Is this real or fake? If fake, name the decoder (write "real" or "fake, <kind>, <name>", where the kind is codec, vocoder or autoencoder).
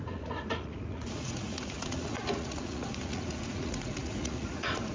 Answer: fake, vocoder, Vocos